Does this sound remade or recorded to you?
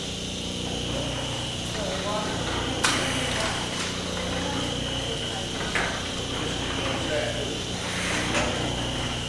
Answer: recorded